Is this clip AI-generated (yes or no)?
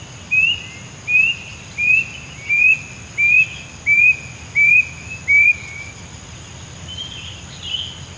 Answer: no